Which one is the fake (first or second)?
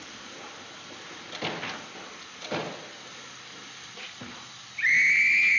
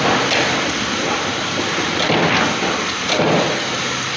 second